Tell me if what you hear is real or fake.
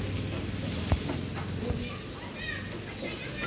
real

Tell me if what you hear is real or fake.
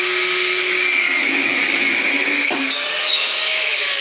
fake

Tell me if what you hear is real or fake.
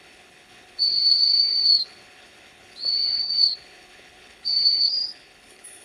fake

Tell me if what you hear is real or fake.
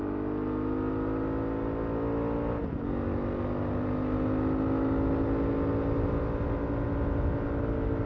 real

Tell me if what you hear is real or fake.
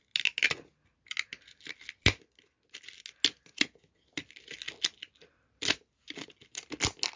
real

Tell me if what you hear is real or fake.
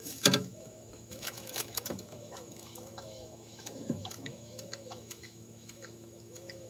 fake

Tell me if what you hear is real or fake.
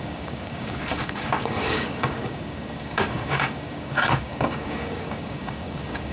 fake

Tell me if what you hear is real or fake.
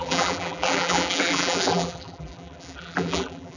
fake